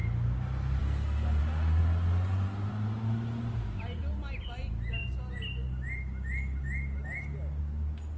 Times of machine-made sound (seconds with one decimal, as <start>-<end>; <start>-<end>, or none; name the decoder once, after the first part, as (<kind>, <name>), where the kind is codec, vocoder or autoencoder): 0.8-1.4 (codec, SNAC)